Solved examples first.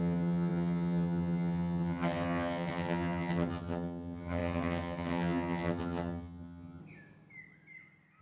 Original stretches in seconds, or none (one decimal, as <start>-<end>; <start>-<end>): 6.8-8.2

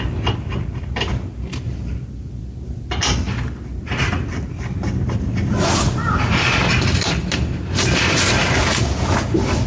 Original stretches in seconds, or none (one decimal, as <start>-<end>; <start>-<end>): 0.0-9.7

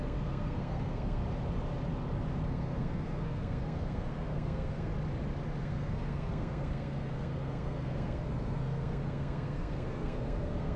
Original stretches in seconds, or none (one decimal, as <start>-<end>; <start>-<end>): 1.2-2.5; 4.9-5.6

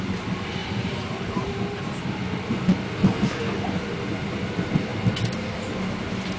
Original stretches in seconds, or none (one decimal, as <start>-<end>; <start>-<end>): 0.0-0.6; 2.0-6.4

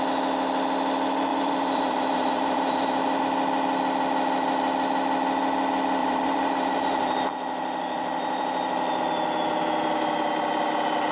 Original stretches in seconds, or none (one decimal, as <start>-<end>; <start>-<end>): 0.0-1.3; 3.2-6.0; 9.0-11.1

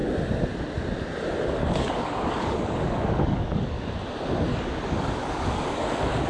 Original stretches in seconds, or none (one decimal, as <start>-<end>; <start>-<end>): 0.0-1.6; 3.9-4.5